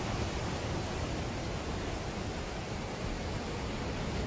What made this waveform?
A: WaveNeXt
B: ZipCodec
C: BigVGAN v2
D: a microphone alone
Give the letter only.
D